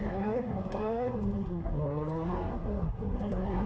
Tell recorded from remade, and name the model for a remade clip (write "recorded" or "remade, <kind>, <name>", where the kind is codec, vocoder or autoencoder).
remade, codec, SNAC